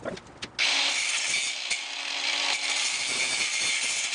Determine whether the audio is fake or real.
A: real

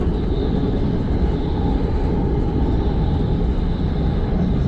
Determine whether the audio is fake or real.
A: real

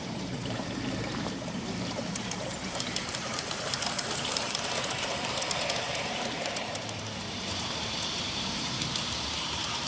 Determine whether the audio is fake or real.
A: fake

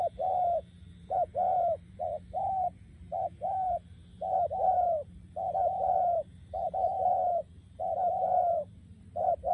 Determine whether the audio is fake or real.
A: fake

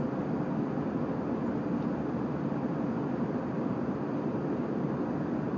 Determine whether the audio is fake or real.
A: real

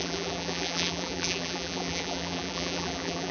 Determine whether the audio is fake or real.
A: fake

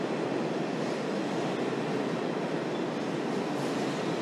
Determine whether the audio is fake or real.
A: real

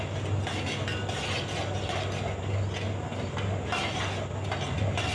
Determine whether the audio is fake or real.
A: real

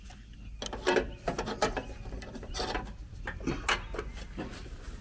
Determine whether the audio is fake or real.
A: real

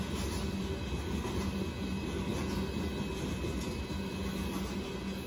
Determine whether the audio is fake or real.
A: real